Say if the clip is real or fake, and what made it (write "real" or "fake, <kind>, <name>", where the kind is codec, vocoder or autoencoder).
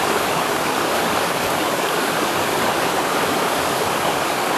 fake, codec, DAC